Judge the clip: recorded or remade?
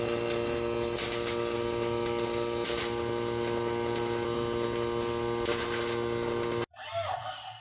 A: recorded